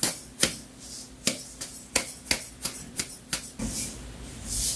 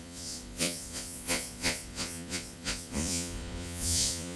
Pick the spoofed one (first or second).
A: second